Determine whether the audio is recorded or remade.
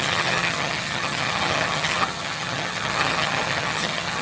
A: remade